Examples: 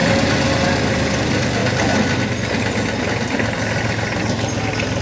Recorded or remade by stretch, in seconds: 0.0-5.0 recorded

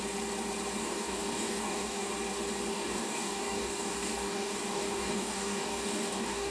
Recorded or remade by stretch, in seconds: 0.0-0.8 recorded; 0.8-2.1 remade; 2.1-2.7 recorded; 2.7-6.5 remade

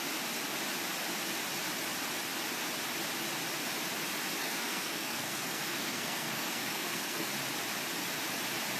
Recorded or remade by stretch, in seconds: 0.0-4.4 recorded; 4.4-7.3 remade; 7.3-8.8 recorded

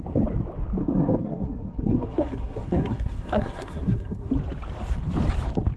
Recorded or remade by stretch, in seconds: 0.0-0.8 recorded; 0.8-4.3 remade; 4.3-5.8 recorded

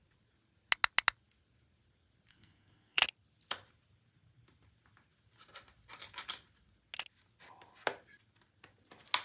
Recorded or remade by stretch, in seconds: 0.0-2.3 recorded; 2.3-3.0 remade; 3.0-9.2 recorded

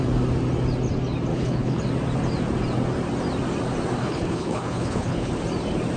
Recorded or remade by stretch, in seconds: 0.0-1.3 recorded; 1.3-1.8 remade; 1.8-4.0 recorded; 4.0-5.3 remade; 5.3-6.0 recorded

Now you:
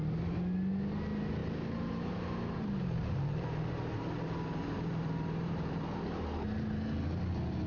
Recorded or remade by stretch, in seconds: 0.0-1.4 recorded; 1.4-6.0 remade; 6.0-7.7 recorded

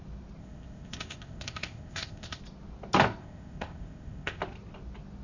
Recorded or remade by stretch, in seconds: 0.0-0.4 recorded; 0.4-2.4 remade; 2.4-3.2 recorded; 3.2-4.4 remade; 4.4-5.2 recorded